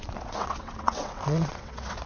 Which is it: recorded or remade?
remade